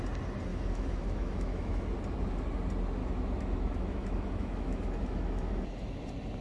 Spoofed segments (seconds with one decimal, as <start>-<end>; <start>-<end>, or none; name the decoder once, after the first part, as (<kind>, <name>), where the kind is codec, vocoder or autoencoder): 0.5-1.9 (autoencoder, DAC-VAE); 3.0-6.0